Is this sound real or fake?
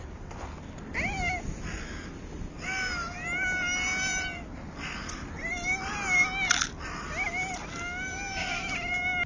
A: real